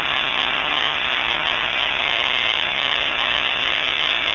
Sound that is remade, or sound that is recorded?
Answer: remade